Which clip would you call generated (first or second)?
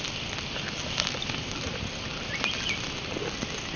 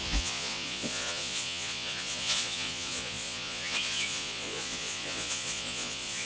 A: second